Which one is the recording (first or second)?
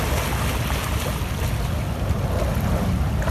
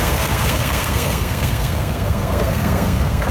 first